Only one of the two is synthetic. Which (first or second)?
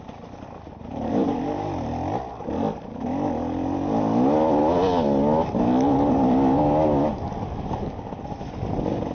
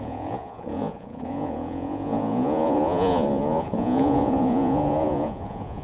second